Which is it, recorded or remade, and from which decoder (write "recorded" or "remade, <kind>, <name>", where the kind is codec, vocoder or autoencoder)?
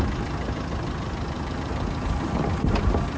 recorded